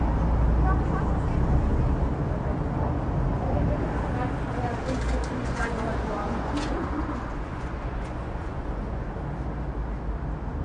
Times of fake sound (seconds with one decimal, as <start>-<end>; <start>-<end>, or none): 5.4-9.1